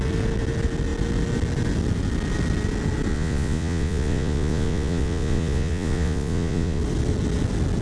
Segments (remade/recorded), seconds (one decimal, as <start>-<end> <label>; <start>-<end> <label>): 0.0-3.1 recorded; 3.1-6.8 remade; 6.8-7.8 recorded